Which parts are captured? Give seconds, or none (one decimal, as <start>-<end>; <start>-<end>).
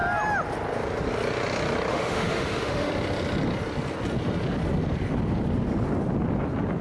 0.0-1.9; 2.9-6.8